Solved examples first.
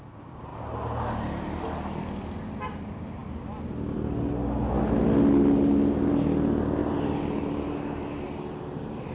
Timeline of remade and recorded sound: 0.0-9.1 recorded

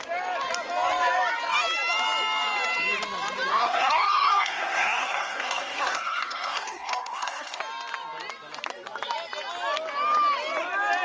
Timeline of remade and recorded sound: 0.0-3.5 recorded; 3.5-7.6 remade; 7.6-11.0 recorded

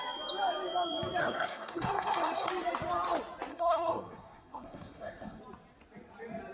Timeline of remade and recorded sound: 0.0-1.2 recorded; 1.2-2.5 remade; 2.5-3.5 recorded; 3.5-5.4 remade; 5.4-6.5 recorded

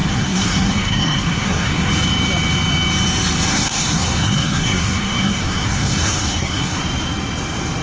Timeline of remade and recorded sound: 0.0-1.9 remade; 1.9-3.5 recorded; 3.5-6.8 remade; 6.8-7.8 recorded

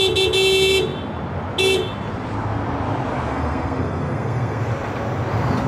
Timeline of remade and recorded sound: 0.0-3.3 recorded; 3.3-4.6 remade; 4.6-5.7 recorded

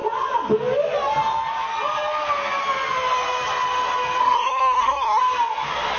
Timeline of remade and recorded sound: 0.0-4.2 recorded; 4.2-5.2 remade; 5.2-6.0 recorded